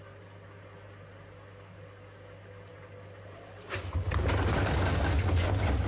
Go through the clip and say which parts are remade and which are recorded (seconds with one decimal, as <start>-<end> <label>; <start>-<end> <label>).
0.0-5.9 recorded